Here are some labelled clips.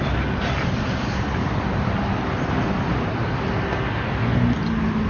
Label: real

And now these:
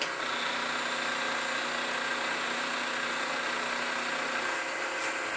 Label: real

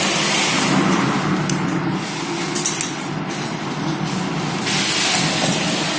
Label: real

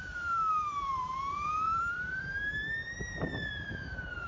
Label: fake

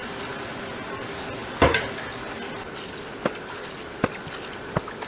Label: real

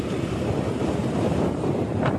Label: fake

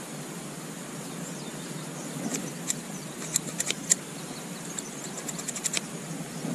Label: real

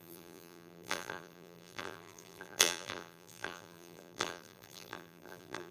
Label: fake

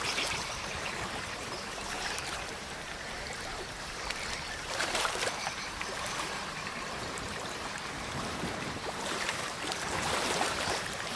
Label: fake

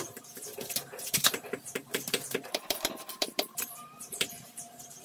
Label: fake